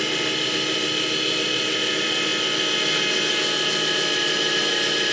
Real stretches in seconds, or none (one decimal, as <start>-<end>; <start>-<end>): 0.0-5.1